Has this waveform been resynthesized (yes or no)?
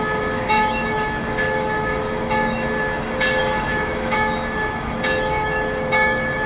yes